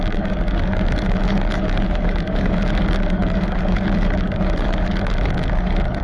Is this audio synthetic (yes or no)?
yes